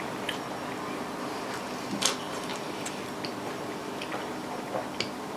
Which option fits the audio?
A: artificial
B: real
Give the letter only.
B